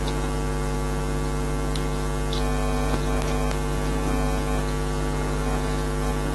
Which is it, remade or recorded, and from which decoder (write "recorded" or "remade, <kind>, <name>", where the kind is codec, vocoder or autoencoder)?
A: recorded